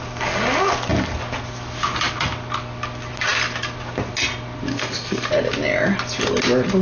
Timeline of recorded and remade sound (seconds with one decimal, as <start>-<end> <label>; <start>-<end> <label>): 0.0-4.7 recorded; 4.7-5.3 remade; 5.3-6.8 recorded